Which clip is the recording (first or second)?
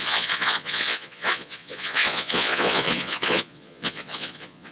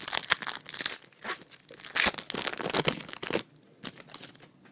second